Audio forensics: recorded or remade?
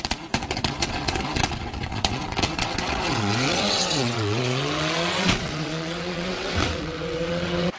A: remade